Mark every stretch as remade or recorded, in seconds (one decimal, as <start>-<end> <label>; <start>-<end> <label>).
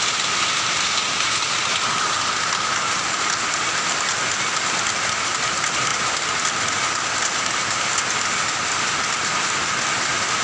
0.0-10.4 recorded